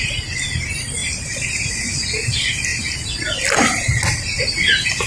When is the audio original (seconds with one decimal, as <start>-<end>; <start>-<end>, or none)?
0.0-5.1